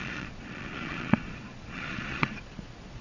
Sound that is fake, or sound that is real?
fake